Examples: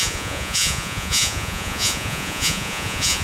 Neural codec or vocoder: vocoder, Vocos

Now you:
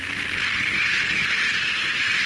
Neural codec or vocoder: none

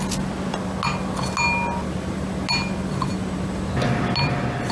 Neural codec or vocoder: none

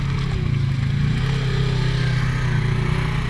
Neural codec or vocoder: none